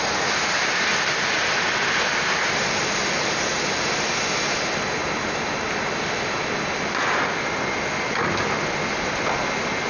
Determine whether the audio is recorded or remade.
recorded